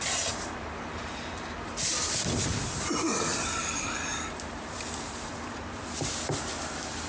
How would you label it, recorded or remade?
remade